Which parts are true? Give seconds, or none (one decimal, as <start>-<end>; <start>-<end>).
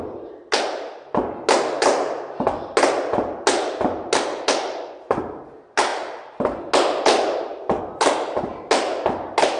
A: 0.0-9.6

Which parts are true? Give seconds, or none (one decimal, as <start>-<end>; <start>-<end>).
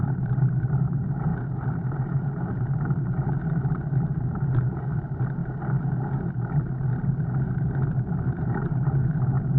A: 5.4-7.7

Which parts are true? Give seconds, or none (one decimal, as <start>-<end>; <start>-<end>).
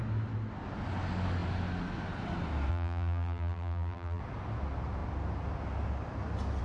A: 0.0-2.7; 4.2-6.6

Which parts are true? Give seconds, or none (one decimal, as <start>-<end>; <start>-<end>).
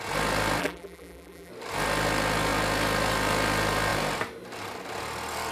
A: 0.0-0.6; 1.5-5.5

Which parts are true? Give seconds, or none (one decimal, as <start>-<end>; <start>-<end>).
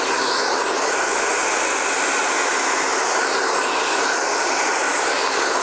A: 0.0-5.6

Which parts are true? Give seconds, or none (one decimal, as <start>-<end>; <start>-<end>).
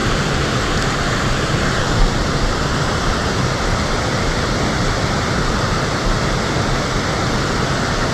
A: 2.0-8.1